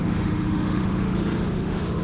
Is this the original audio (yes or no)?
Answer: no